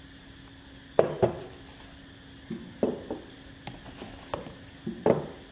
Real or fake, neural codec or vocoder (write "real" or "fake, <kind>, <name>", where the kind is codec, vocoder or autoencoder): real